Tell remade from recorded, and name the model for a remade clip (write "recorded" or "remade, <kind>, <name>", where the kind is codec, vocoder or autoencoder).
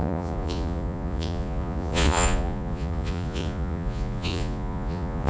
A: remade, vocoder, Vocos